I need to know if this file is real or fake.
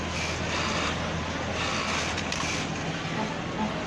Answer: real